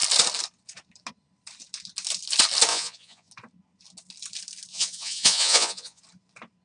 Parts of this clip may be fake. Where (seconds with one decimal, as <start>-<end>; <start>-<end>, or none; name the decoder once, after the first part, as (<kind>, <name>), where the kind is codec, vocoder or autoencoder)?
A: 2.7-3.3 (vocoder, Vocos); 4.7-6.0